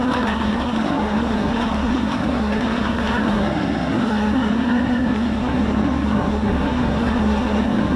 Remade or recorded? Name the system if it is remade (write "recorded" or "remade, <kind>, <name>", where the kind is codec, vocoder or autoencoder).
remade, codec, SNAC